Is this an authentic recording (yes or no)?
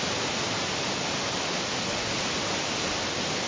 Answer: yes